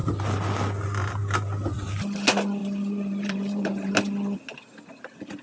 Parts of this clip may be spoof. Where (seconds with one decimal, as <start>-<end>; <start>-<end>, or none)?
2.6-3.9